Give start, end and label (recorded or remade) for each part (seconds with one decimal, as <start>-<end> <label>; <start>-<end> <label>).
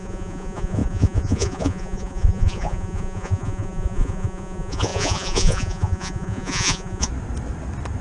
0.0-7.1 remade; 7.1-8.0 recorded